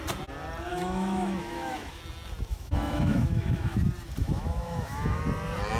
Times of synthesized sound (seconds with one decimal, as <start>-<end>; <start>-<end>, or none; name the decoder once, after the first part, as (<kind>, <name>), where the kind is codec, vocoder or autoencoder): 0.7-2.0 (autoencoder, DAC-VAE); 2.5-3.8; 4.2-5.2